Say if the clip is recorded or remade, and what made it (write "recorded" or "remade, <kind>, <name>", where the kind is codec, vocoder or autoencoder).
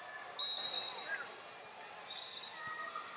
recorded